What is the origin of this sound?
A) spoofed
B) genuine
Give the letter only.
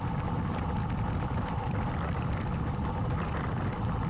B